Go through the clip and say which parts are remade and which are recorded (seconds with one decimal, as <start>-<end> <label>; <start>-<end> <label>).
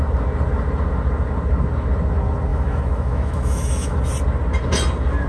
0.0-2.5 recorded; 2.5-4.0 remade; 4.0-5.3 recorded